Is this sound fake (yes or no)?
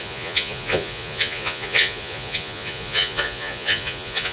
yes